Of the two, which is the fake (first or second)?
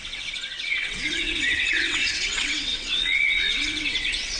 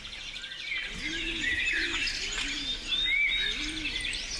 first